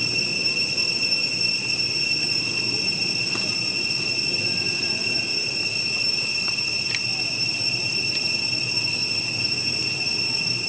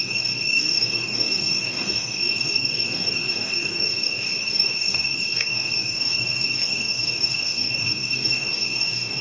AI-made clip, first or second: second